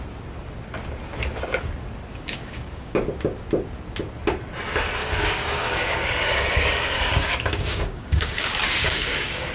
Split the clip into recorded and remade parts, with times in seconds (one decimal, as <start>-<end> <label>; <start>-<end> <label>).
0.0-2.1 recorded; 2.1-3.0 remade; 3.0-5.0 recorded; 5.0-9.5 remade